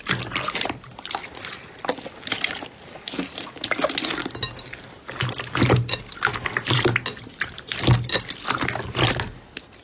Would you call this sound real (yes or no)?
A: yes